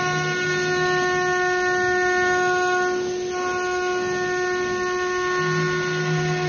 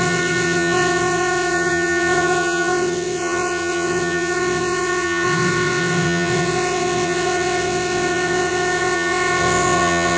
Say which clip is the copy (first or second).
second